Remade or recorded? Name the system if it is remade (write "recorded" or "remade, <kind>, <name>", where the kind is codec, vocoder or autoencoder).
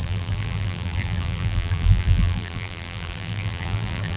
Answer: remade, vocoder, BigVGAN v2